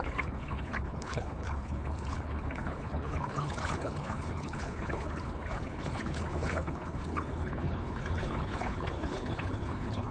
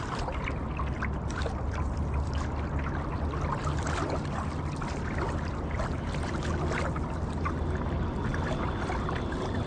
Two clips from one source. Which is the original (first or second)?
second